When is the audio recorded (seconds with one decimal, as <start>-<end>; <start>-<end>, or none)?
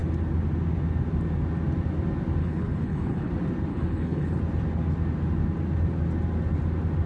0.0-2.4; 3.3-3.7; 4.4-7.1